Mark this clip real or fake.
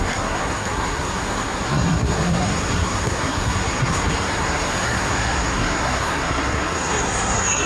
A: fake